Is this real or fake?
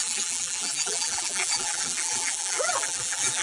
fake